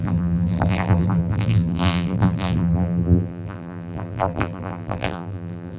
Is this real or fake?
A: fake